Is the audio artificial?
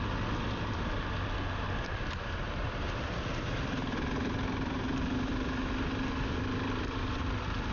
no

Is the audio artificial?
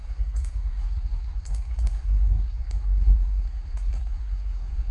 yes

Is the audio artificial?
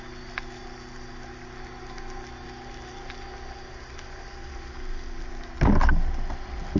no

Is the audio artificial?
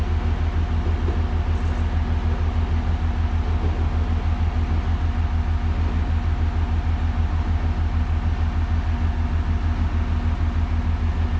no